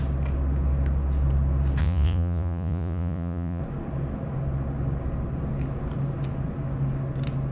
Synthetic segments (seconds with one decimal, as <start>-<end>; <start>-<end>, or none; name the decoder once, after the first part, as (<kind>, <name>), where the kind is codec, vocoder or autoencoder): 1.8-3.6 (vocoder, Vocos)